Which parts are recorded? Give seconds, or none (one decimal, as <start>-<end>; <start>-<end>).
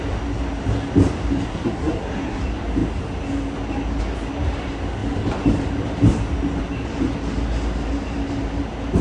0.0-1.5; 2.4-9.0